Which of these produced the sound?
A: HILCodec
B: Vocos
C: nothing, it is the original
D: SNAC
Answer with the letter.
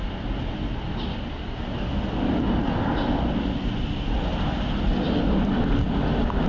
C